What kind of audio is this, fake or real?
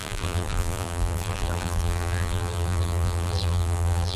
fake